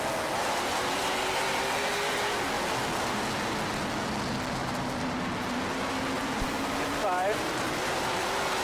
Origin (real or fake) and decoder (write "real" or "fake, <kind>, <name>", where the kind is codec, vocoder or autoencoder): real